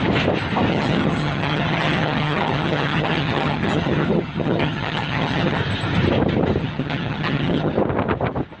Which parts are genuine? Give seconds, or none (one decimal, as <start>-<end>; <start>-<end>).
0.0-0.7; 5.6-6.6; 7.7-8.6